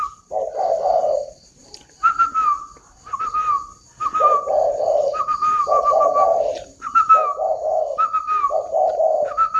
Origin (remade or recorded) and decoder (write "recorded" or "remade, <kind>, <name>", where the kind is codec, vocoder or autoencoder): recorded